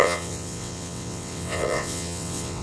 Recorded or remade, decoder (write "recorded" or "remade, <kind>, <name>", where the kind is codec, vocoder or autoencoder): remade, vocoder, WaveNeXt